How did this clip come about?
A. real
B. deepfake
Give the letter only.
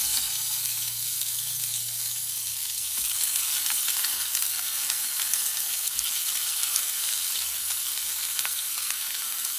B